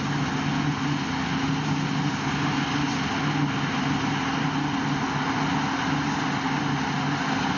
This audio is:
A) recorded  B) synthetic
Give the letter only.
A